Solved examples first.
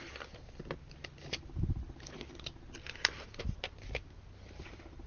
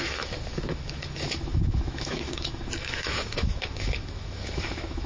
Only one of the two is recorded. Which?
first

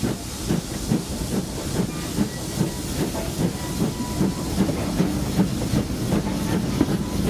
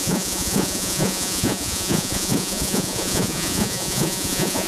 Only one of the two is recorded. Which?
first